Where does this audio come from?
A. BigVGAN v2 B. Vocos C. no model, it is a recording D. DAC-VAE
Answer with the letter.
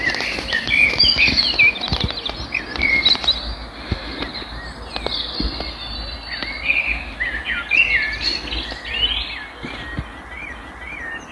C